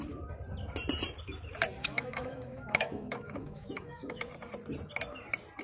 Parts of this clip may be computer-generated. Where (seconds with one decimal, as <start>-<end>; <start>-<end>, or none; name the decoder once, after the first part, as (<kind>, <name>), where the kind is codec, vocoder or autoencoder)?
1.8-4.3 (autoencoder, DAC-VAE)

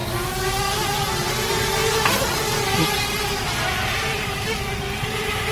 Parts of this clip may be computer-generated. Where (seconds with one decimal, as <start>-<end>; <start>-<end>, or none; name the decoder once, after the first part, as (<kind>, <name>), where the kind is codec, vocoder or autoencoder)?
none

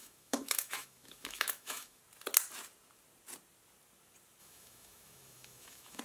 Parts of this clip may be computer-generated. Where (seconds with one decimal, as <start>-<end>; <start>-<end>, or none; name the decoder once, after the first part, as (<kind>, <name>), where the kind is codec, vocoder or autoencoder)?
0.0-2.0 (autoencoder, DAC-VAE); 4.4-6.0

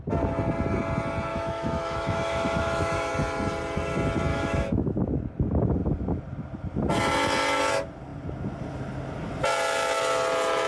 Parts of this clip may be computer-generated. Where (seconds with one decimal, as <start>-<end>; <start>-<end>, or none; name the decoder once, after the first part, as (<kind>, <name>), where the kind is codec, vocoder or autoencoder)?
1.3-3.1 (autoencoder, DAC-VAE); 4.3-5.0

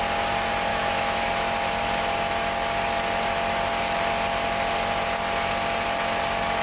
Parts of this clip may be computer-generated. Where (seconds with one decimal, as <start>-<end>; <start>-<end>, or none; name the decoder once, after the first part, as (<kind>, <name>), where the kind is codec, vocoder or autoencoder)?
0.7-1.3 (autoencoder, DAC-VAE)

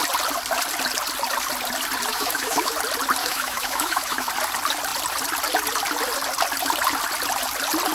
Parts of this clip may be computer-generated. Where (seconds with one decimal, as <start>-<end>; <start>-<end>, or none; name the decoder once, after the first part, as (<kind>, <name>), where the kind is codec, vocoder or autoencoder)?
2.1-2.7 (autoencoder, DAC-VAE); 3.2-4.3

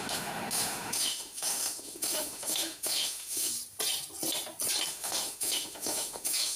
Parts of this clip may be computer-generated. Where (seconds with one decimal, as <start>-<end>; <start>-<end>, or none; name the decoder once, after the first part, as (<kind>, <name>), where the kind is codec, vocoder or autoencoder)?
0.0-3.5 (autoencoder, DAC-VAE); 4.9-6.6